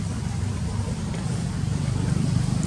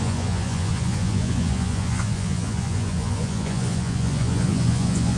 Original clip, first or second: first